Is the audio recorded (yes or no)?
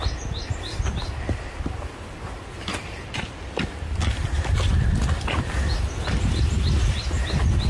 yes